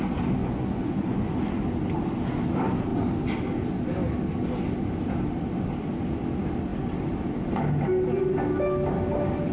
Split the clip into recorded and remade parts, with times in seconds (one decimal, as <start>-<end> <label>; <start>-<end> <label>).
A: 0.0-0.4 recorded; 0.4-1.6 remade; 1.6-9.5 recorded